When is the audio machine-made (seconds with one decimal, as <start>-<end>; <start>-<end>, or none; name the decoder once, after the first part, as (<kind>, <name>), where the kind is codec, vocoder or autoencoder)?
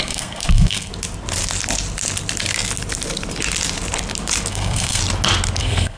0.0-0.9 (codec, SNAC); 4.5-5.0; 5.6-6.0